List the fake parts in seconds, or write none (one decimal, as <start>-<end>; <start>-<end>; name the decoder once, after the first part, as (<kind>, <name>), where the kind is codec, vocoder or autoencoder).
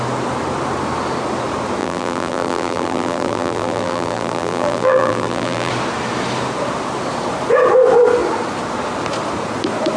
1.8-5.7 (vocoder, BigVGAN v2)